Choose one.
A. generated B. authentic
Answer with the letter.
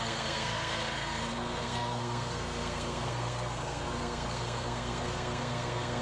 A